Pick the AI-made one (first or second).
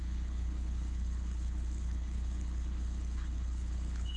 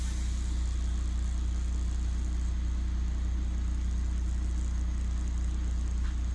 first